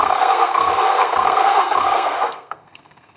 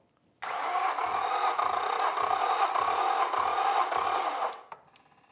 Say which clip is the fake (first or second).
first